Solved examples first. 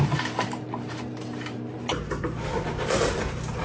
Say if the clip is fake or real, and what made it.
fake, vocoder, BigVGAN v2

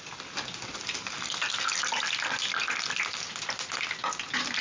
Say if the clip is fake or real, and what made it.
real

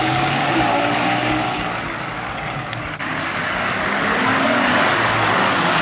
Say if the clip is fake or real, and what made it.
fake, codec, DAC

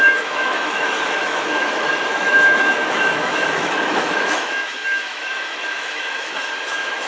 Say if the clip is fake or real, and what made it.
fake, autoencoder, DAC-VAE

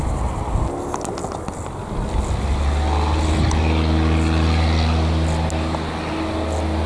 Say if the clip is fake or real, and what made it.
real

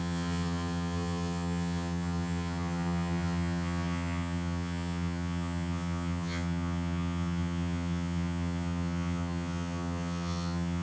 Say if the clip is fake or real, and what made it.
fake, vocoder, HiFi-GAN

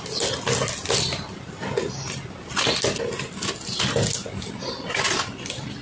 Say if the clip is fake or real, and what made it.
real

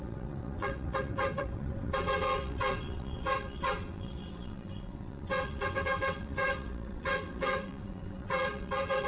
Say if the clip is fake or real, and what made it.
fake, vocoder, WaveNeXt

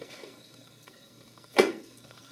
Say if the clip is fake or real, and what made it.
fake, codec, SNAC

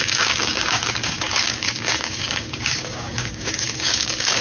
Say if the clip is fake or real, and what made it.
fake, codec, DAC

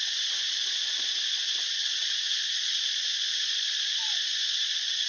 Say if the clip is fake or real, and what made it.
fake, vocoder, Vocos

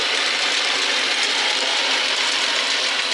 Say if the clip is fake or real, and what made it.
real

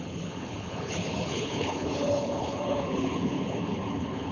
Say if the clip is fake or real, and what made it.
fake, codec, HILCodec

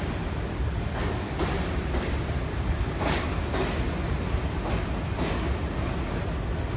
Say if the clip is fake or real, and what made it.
real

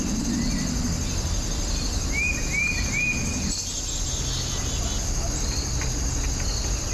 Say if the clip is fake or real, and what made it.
real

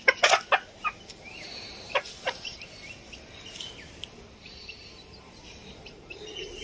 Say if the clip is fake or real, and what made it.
fake, vocoder, BigVGAN v2